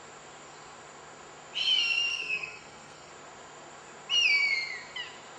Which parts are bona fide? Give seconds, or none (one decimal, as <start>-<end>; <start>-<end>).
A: 0.0-2.1; 3.1-5.4